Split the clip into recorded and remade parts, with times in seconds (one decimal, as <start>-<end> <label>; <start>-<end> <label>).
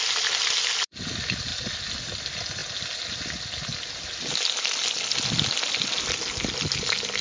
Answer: 0.0-7.2 recorded